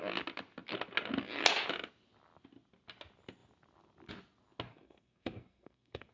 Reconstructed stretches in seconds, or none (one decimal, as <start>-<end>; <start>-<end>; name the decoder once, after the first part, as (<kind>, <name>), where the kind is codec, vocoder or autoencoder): 4.7-6.1 (codec, SNAC)